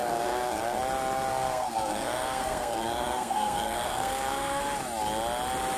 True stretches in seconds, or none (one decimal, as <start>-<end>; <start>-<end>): 0.8-1.3; 4.6-5.8